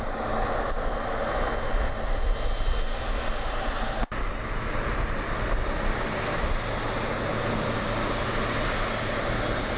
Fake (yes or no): no